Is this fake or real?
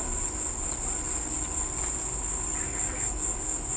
real